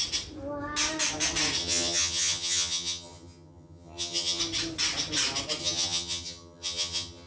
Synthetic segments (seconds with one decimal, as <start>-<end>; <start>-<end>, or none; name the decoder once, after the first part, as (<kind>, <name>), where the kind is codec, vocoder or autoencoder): 1.6-4.4 (vocoder, HiFi-GAN); 5.6-7.3